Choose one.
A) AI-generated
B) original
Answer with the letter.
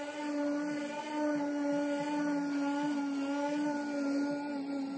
B